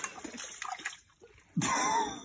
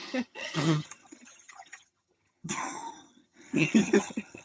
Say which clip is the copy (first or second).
second